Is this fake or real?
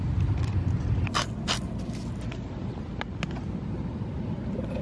real